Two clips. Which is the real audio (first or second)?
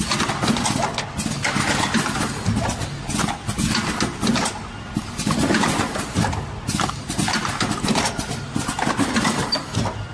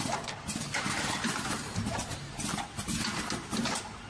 first